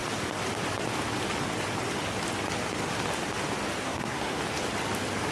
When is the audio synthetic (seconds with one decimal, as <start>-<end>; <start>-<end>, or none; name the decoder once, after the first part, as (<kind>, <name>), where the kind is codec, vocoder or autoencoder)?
3.8-4.4 (codec, SNAC)